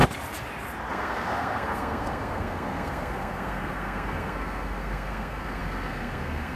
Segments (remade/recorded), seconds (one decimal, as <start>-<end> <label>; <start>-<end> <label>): 0.0-0.9 recorded; 0.9-6.6 remade